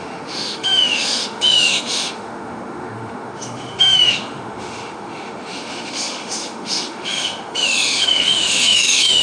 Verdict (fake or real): fake